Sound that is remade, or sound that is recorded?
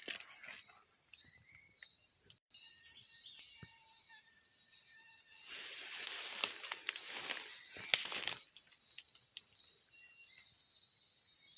recorded